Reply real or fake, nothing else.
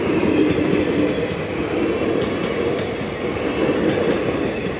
real